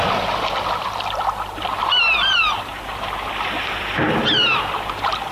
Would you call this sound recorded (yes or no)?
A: yes